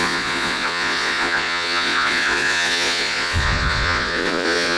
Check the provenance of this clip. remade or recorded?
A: remade